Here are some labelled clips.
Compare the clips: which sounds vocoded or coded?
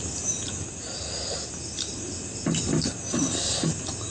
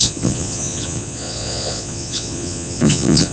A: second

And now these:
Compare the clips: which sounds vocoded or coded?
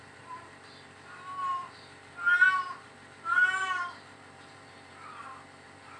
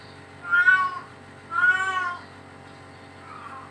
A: first